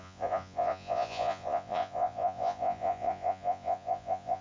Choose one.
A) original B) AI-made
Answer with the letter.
B